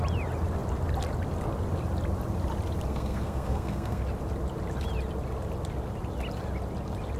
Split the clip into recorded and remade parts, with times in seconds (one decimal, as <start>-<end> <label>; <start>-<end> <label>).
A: 0.0-2.9 recorded; 2.9-4.0 remade; 4.0-7.2 recorded